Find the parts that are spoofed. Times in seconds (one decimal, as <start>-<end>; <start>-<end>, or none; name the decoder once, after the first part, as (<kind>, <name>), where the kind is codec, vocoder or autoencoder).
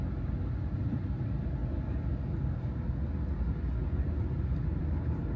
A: none